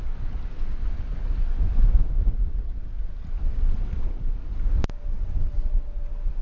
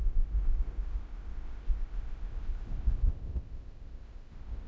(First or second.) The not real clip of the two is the second